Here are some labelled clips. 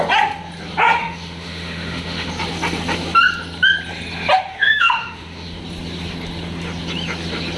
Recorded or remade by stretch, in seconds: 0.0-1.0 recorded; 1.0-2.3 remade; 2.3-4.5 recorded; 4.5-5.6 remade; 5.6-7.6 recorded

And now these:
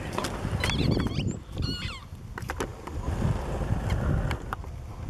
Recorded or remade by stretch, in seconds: 0.0-5.1 recorded